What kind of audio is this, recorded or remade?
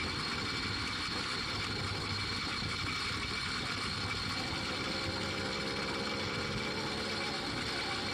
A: recorded